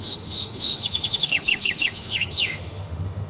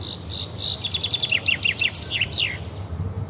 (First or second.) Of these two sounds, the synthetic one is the first